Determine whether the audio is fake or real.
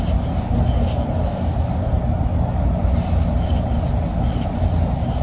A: real